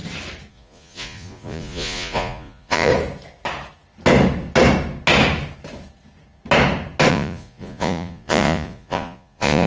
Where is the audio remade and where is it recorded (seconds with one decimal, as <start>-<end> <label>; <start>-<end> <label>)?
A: 0.0-0.5 recorded; 0.5-2.9 remade; 2.9-7.1 recorded; 7.1-9.7 remade

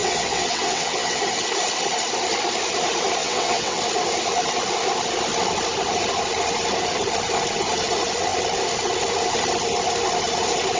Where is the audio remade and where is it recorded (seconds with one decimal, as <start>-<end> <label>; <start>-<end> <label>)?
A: 0.0-1.2 remade; 1.2-3.2 recorded; 3.2-3.8 remade; 3.8-10.8 recorded

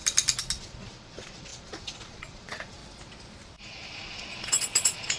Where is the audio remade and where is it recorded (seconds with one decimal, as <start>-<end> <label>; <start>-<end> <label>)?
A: 0.0-0.6 recorded; 0.6-2.8 remade; 2.8-3.6 recorded; 3.6-5.2 remade

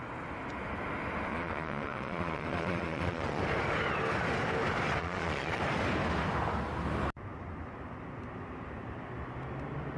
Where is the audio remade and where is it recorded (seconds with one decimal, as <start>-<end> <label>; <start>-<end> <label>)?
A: 0.0-1.3 recorded; 1.3-3.4 remade; 3.4-5.0 recorded; 5.0-5.6 remade; 5.6-10.0 recorded